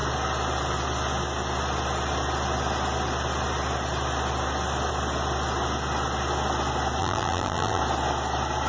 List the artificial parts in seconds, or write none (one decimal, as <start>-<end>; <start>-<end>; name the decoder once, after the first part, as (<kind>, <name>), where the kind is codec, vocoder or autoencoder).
7.0-7.8 (vocoder, BigVGAN v2)